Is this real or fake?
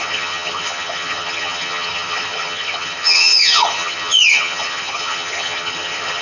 fake